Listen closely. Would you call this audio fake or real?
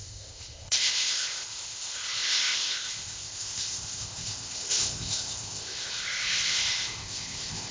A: fake